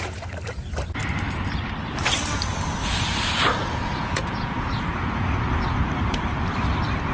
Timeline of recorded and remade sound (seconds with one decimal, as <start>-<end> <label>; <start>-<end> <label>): 0.0-3.6 recorded; 3.6-5.5 remade; 5.5-7.1 recorded